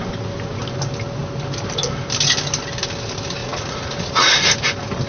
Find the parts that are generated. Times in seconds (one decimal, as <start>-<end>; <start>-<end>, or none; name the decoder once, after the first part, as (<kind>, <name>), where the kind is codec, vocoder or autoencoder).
3.4-4.3 (vocoder, Vocos)